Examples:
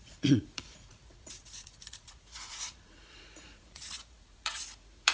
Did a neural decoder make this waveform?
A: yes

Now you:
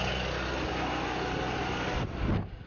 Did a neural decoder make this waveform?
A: no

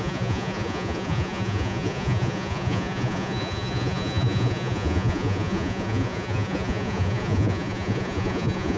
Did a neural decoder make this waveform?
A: yes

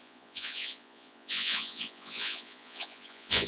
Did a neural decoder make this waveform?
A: yes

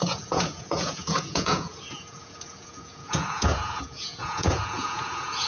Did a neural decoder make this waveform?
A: yes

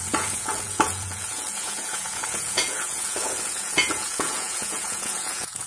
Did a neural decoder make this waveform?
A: yes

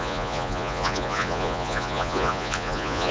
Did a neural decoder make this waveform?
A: yes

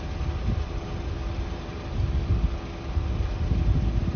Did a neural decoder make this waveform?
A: no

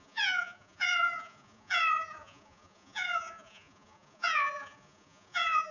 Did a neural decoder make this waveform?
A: yes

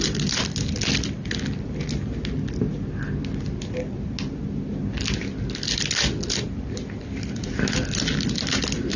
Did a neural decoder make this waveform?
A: no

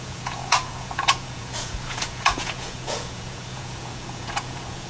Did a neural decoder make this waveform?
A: yes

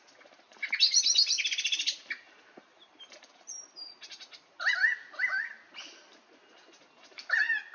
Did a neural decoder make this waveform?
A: no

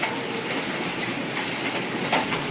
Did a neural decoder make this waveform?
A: no